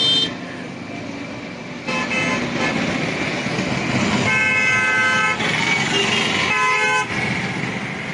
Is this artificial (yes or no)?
no